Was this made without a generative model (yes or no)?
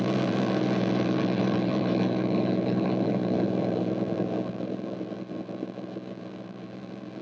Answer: no